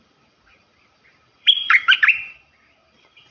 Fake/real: fake